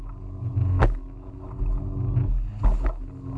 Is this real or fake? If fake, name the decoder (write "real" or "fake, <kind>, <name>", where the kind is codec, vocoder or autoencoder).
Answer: real